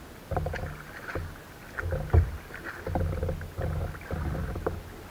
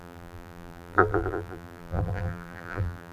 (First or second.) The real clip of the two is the first